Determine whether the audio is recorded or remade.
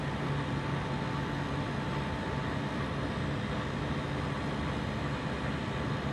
recorded